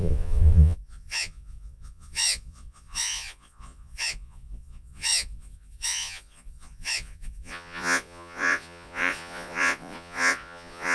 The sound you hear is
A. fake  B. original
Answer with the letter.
A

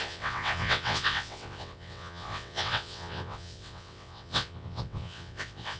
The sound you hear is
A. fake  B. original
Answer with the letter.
A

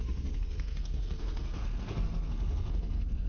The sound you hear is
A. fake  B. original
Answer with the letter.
A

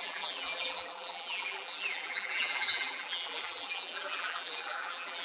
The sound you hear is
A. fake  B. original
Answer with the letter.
A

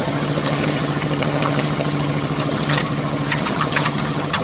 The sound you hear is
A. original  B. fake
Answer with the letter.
B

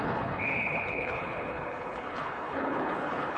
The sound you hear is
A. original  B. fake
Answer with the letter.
B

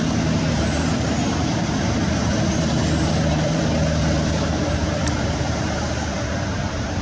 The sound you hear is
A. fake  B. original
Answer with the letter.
A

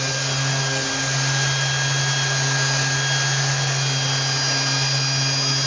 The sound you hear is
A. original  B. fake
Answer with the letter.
A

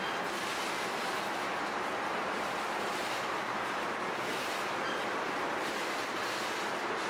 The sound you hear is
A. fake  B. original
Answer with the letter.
B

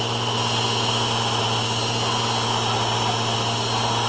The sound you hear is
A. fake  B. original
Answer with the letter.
B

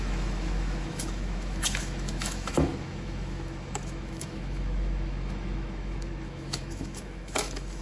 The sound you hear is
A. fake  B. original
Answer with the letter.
A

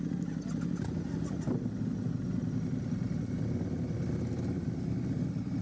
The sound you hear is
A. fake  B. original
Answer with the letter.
B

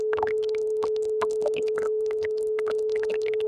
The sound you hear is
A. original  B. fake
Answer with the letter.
B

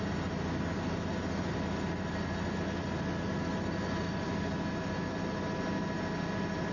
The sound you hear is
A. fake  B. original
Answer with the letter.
B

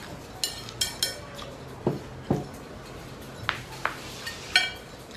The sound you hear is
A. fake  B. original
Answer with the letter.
B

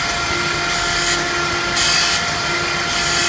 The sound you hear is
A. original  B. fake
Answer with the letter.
A